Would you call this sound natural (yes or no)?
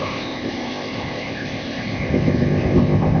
no